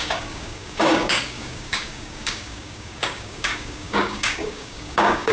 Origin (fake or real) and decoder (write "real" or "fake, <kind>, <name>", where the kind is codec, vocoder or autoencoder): fake, codec, DAC